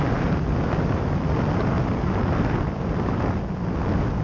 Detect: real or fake real